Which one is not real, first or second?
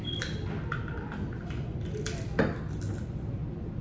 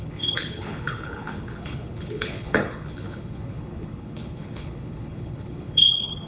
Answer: second